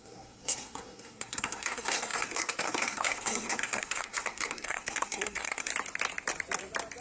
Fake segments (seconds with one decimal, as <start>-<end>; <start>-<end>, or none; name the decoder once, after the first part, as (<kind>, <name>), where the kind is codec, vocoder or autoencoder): 0.0-5.7 (codec, SNAC)